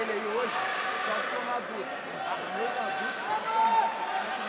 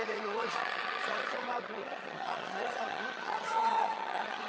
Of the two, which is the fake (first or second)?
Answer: second